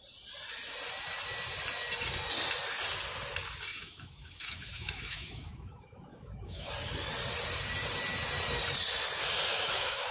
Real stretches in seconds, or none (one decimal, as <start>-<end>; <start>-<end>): 0.0-3.7; 6.7-9.5